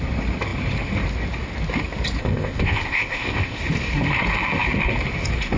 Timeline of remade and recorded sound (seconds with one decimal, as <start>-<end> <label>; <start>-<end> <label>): 0.0-2.2 recorded; 2.2-3.6 remade; 3.6-5.6 recorded